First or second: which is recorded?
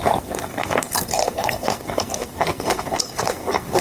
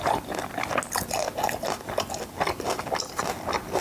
second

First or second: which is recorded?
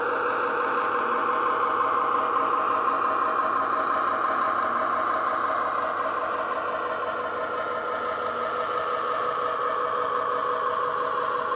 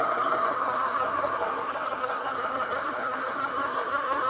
first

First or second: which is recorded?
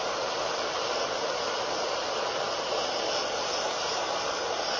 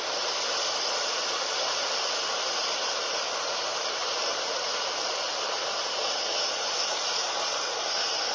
first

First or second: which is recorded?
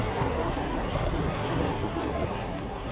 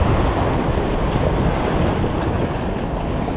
second